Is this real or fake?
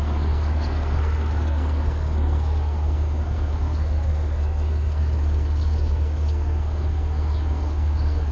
fake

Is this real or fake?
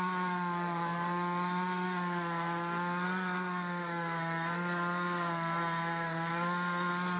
fake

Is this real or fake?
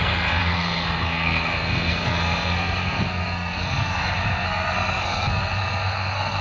fake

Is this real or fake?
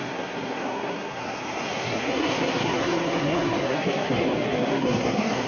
fake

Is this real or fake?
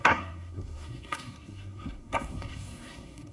fake